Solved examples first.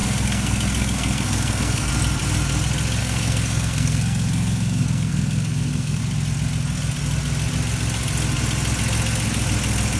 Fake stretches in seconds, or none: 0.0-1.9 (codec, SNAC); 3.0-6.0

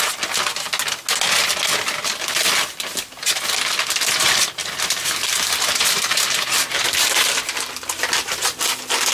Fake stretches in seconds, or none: 4.6-8.6 (vocoder, BigVGAN v2)

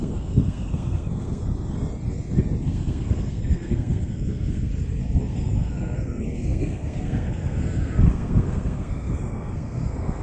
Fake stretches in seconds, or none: 0.0-1.4 (codec, SNAC); 2.6-4.7; 5.2-10.2

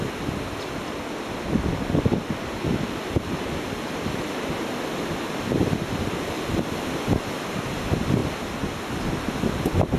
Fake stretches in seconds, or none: none

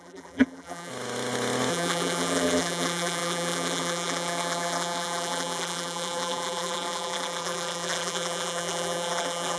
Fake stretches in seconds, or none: 0.0-0.9 (vocoder, BigVGAN v2); 1.7-9.6

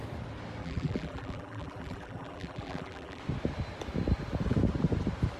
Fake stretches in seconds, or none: 0.6-3.2 (vocoder, BigVGAN v2)

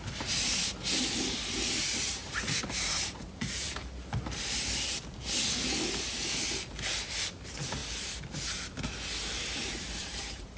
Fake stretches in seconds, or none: 2.2-3.7 (vocoder, BigVGAN v2); 10.0-10.6

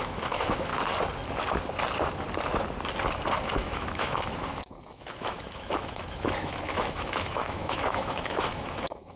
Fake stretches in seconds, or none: 0.0-0.7 (autoencoder, DAC-VAE); 3.4-9.2